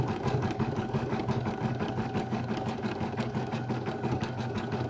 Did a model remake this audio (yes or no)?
yes